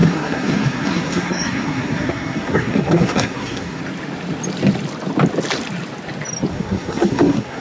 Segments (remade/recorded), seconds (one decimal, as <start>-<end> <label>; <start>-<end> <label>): 0.0-3.8 remade; 3.8-6.5 recorded; 6.5-7.6 remade